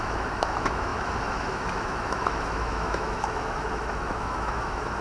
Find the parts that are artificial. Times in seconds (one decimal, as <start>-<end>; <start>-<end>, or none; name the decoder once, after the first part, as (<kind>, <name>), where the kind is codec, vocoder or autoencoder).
0.0-5.0 (autoencoder, DAC-VAE)